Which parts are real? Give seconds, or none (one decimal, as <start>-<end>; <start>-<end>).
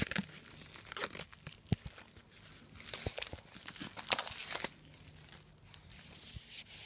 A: 0.0-6.9